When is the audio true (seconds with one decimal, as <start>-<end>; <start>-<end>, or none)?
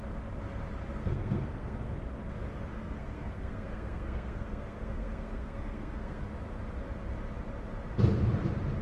0.0-1.0; 1.9-2.7; 6.2-8.8